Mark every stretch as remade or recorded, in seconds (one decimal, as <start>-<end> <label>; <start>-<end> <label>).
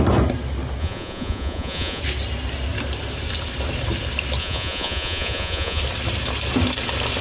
0.0-0.8 recorded; 0.8-2.0 remade; 2.0-4.4 recorded; 4.4-5.8 remade; 5.8-7.2 recorded